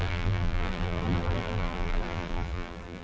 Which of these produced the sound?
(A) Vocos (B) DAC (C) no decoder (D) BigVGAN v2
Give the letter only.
D